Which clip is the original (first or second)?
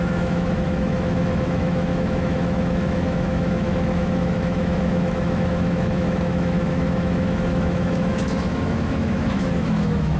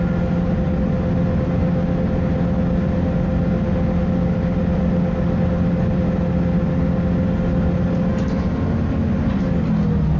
second